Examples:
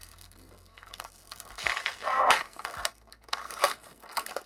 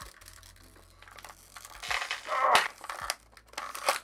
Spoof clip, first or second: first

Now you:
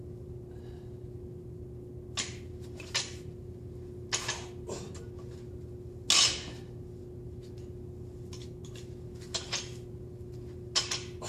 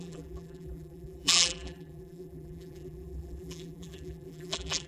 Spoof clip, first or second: second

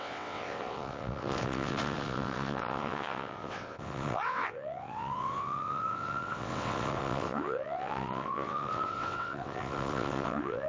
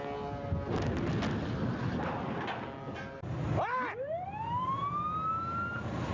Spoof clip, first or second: first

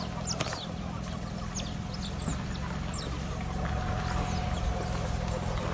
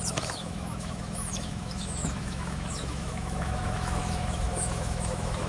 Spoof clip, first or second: second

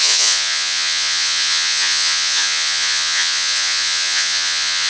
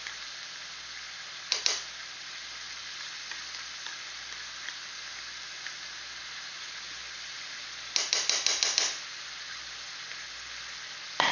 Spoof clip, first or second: first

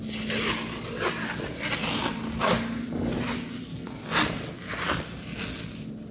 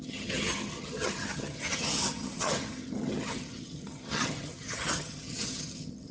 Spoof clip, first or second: second